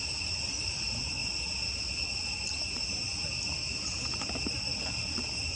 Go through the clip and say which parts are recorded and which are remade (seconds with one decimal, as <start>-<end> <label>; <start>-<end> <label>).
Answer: 0.0-5.6 recorded